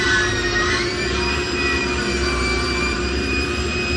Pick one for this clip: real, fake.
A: fake